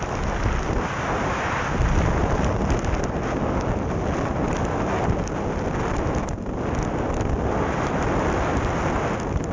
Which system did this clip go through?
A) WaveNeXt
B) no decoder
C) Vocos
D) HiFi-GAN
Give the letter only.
B